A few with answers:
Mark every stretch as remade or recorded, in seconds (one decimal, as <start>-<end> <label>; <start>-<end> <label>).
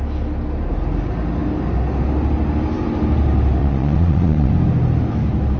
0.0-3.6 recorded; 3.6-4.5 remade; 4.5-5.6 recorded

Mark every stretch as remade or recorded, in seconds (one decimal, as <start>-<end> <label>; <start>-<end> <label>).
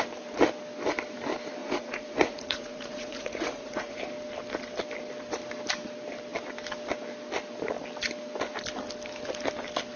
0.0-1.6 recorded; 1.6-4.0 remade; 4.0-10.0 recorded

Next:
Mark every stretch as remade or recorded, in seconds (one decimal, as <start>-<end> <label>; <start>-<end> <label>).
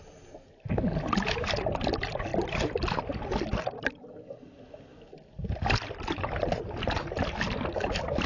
0.0-8.3 recorded